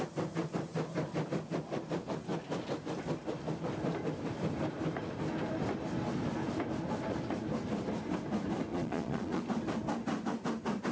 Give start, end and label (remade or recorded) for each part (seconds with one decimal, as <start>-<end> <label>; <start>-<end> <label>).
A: 0.0-8.7 recorded; 8.7-9.4 remade; 9.4-10.9 recorded